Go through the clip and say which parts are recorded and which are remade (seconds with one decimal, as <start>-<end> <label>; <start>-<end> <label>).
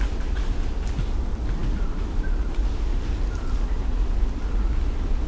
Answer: 0.0-5.3 recorded